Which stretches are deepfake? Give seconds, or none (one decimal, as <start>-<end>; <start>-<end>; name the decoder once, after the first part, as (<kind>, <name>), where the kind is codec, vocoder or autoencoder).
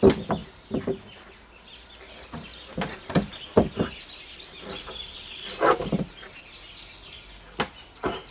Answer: none